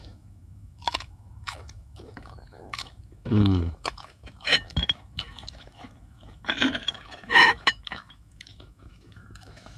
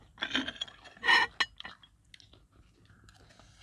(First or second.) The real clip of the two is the second